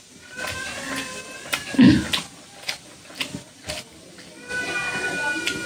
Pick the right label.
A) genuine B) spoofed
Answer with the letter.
A